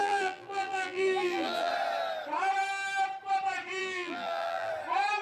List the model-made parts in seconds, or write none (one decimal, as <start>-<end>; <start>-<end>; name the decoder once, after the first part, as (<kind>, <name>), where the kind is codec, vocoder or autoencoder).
0.0-1.7 (vocoder, BigVGAN v2); 3.8-4.7